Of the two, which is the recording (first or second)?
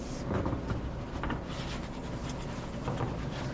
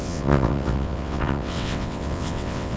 first